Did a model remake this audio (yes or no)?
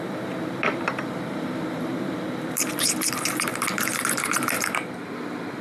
yes